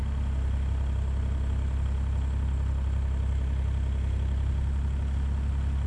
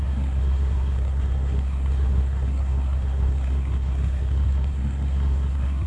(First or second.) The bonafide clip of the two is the first